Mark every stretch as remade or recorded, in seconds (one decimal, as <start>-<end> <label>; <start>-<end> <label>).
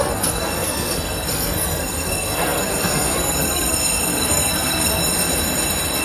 0.0-5.0 remade; 5.0-6.0 recorded